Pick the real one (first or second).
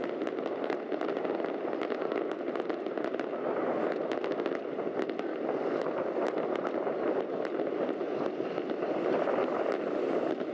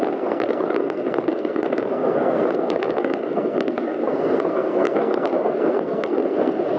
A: first